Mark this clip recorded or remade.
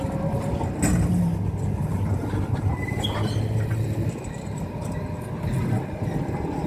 recorded